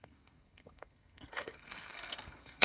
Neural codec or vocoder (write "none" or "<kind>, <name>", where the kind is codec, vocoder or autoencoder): codec, SNAC